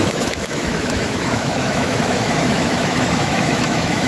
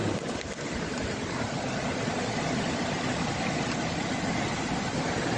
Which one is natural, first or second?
second